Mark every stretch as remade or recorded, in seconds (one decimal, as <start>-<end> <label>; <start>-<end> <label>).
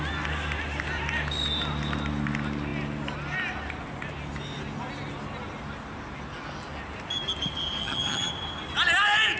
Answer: 0.0-7.8 recorded; 7.8-8.3 remade; 8.3-9.4 recorded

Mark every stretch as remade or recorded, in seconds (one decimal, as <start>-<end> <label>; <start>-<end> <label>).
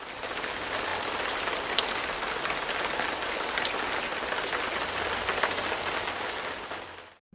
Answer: 0.0-7.3 recorded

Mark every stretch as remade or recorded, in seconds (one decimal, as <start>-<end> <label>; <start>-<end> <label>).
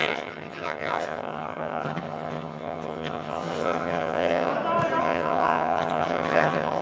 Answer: 0.0-4.5 remade; 4.5-5.0 recorded; 5.0-6.8 remade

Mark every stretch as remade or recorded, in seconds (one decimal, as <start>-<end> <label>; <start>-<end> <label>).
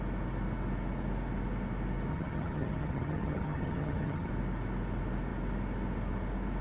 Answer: 0.0-2.1 recorded; 2.1-4.3 remade; 4.3-6.6 recorded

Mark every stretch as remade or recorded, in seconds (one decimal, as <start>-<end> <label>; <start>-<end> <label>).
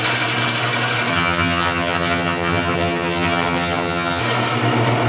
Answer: 0.0-1.1 recorded; 1.1-4.2 remade; 4.2-5.1 recorded